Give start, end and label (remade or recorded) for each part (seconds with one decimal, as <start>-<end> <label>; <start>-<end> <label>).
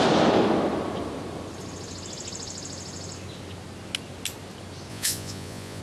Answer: 0.0-4.9 recorded; 4.9-5.8 remade